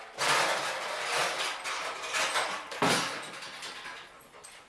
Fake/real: real